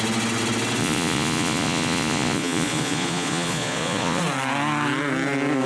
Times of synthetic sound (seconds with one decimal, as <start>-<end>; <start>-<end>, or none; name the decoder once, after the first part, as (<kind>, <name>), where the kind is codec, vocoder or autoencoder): 0.8-4.2 (vocoder, Vocos)